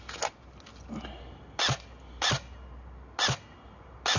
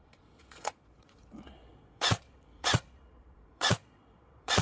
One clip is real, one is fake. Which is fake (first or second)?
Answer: second